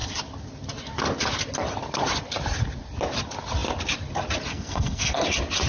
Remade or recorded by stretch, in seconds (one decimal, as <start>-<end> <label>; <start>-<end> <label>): 0.0-4.5 recorded; 4.5-5.2 remade; 5.2-5.7 recorded